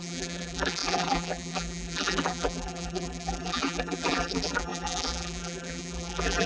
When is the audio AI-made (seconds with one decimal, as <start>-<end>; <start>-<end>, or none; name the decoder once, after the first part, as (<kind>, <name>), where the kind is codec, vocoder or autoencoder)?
0.0-6.5 (vocoder, BigVGAN v2)